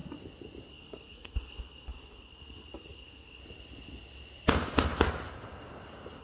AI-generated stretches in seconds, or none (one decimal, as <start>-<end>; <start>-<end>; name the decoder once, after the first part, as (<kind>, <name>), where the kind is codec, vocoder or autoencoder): 0.7-3.4 (codec, SNAC)